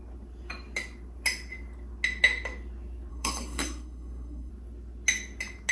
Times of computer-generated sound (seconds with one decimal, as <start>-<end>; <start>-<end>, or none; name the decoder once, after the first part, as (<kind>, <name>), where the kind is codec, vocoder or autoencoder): 3.1-4.5 (codec, SNAC)